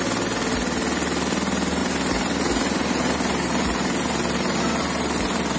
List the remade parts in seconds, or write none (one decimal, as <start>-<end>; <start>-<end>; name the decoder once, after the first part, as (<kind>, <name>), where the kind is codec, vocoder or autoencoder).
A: 1.8-5.6 (vocoder, BigVGAN v2)